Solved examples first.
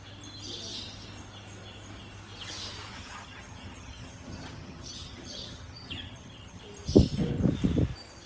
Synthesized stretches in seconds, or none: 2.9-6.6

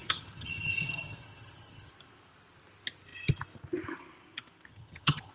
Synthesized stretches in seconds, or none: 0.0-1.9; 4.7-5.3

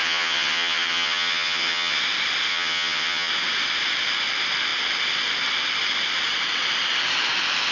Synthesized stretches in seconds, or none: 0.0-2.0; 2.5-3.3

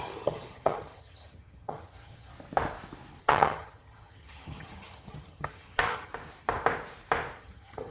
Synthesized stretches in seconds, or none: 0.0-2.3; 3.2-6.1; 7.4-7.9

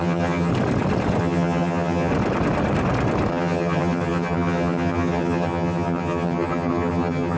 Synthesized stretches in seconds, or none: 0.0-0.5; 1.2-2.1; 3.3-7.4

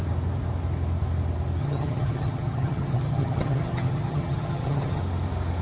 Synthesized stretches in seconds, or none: 1.6-5.0

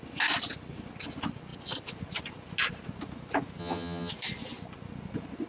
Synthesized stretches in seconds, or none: 3.6-4.1